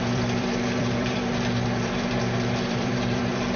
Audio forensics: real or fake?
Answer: fake